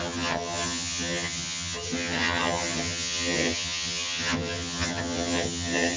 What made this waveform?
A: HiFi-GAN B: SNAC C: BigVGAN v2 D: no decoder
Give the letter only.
A